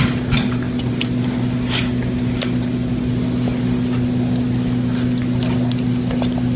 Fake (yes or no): no